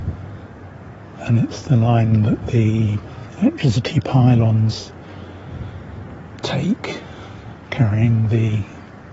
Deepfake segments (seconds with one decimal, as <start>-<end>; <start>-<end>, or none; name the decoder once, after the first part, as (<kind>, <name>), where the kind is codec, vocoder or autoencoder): 0.0-5.4 (codec, DAC); 7.2-9.1